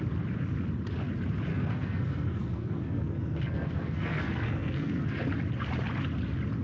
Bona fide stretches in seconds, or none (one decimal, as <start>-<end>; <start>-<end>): 0.0-1.5; 5.2-6.6